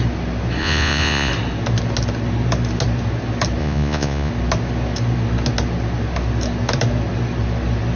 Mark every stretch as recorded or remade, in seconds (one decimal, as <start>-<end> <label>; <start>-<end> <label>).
0.0-0.6 recorded; 0.6-1.3 remade; 1.3-3.6 recorded; 3.6-4.3 remade; 4.3-8.0 recorded